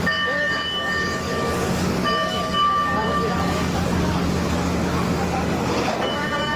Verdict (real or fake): fake